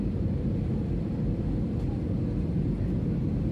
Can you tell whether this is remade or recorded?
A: recorded